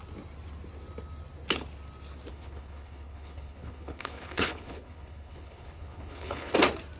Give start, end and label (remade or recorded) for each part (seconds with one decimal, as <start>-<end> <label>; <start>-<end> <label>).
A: 0.0-2.3 recorded; 2.3-6.5 remade; 6.5-7.0 recorded